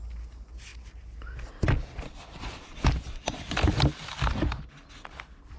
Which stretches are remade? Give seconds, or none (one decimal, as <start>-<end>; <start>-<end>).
none